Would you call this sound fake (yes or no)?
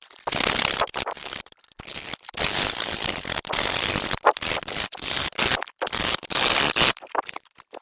yes